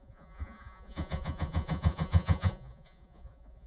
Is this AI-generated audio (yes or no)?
yes